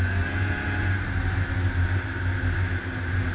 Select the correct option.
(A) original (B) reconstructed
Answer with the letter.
A